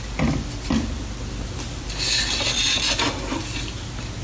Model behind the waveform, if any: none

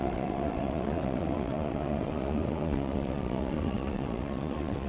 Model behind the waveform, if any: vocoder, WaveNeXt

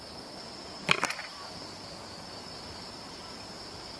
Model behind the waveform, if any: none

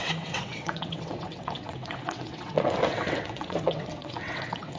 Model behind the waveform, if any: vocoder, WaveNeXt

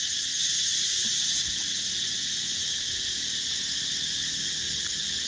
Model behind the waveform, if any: none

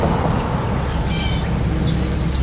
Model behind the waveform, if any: none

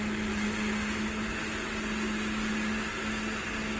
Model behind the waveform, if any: none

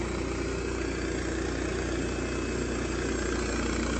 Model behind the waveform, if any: none